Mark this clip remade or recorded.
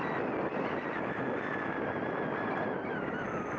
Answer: recorded